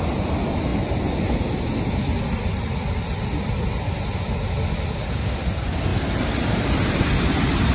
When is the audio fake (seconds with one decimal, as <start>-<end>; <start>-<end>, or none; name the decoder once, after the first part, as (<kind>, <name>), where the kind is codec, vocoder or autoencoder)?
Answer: 5.9-7.0 (vocoder, BigVGAN v2)